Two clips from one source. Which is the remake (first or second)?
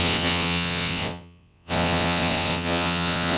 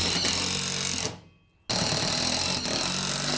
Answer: first